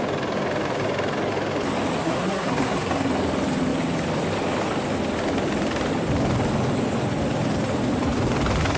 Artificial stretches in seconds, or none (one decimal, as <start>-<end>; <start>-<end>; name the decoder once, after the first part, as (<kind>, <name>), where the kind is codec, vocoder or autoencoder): 2.0-3.1 (codec, SNAC)